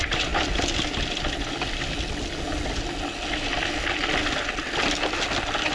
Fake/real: real